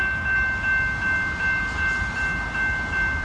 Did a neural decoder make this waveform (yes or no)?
no